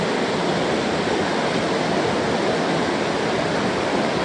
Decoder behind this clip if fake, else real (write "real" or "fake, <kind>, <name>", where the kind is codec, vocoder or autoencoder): real